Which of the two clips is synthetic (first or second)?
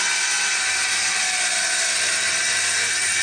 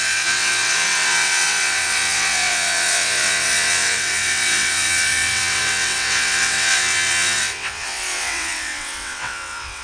second